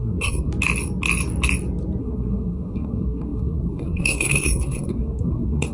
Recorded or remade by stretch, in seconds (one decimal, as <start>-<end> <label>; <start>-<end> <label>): 0.0-0.5 remade; 0.5-2.0 recorded; 2.0-5.7 remade